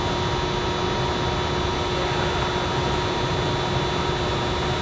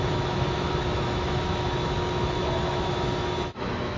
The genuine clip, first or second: first